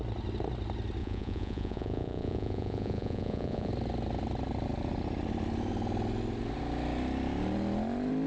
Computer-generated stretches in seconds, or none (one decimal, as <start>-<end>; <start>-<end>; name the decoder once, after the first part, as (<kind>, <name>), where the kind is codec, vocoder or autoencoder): 1.0-3.7 (vocoder, Vocos)